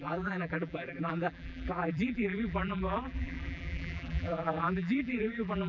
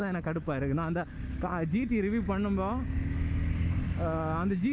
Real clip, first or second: second